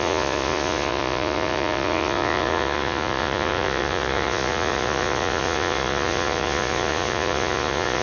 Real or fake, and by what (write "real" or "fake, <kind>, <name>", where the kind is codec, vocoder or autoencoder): fake, vocoder, Vocos